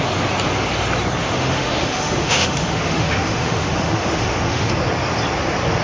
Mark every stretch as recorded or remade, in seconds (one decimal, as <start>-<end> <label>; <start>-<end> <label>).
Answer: 0.0-1.2 recorded; 1.2-4.7 remade; 4.7-5.8 recorded